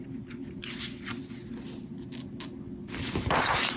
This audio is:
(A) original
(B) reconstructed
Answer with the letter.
A